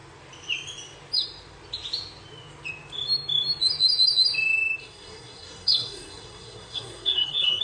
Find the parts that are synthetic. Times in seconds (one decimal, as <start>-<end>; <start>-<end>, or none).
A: 4.8-7.6